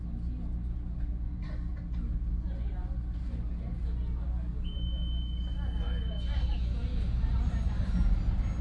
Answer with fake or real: real